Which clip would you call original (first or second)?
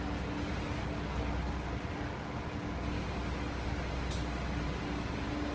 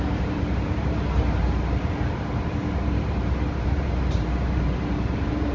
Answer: first